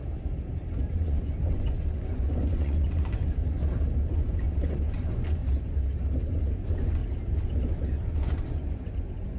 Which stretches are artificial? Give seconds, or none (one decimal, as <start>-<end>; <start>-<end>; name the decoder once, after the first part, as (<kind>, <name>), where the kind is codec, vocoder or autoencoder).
0.9-3.4 (vocoder, Vocos); 4.1-5.4; 6.2-7.0; 8.0-9.4